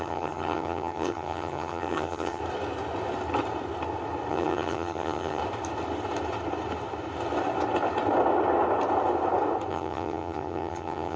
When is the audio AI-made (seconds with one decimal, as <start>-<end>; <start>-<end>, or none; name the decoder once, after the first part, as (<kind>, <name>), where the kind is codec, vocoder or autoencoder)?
0.0-2.4 (vocoder, HiFi-GAN); 4.3-5.4; 9.7-11.2